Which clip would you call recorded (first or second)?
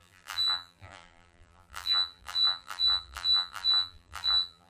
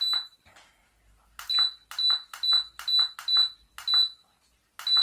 second